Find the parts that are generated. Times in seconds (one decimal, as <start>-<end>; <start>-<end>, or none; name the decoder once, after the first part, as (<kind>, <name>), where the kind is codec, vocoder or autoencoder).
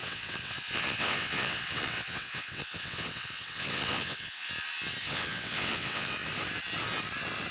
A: 0.0-4.5 (vocoder, WaveNeXt); 5.0-6.1